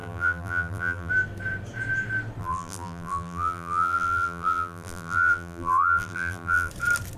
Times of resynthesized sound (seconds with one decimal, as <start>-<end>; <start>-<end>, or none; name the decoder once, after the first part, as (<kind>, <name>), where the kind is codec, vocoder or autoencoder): 0.0-1.1 (vocoder, BigVGAN v2); 2.4-6.7